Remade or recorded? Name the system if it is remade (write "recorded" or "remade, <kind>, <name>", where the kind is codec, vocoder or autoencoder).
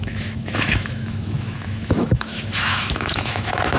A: remade, autoencoder, DAC-VAE